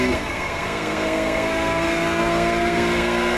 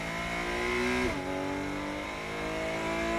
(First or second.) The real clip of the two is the second